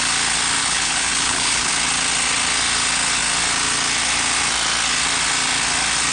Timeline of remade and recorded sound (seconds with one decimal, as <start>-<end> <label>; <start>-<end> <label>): 0.0-0.6 recorded; 0.6-1.7 remade; 1.7-6.1 recorded

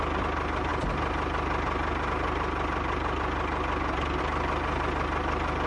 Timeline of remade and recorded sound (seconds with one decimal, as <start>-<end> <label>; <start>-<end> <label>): 0.0-5.7 recorded

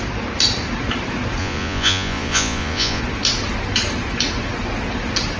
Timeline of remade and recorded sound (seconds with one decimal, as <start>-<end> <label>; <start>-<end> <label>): 0.0-1.4 recorded; 1.4-3.0 remade; 3.0-5.4 recorded

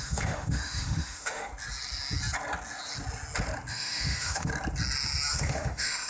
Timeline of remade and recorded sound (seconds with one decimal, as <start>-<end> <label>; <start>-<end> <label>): 0.0-1.5 remade; 1.5-3.7 recorded; 3.7-4.5 remade; 4.5-5.3 recorded; 5.3-6.1 remade